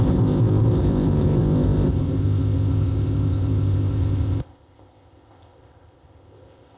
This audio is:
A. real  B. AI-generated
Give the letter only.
B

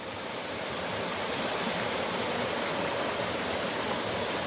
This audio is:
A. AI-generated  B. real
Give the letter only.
B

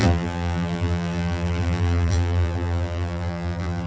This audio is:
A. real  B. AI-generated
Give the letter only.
B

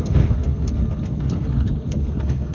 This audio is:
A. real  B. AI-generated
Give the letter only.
B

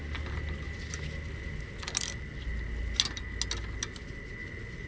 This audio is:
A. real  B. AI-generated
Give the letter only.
A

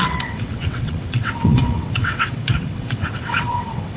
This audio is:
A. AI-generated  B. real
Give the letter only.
A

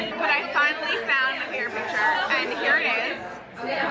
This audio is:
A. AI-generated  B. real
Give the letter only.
B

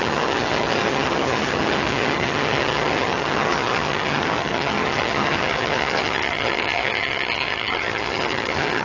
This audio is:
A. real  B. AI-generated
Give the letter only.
B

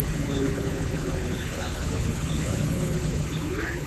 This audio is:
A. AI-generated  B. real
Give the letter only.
A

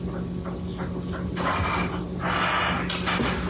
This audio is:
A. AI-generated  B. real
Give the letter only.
B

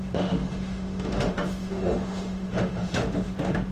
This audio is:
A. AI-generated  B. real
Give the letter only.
A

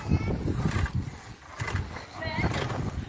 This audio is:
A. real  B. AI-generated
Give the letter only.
A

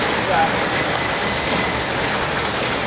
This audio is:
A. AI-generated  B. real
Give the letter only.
B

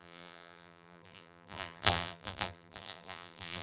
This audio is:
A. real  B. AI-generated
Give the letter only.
B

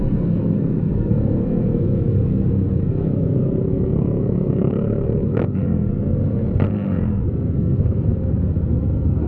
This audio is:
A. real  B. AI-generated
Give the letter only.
B